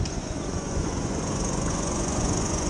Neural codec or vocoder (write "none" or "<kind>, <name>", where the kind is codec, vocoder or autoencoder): vocoder, Vocos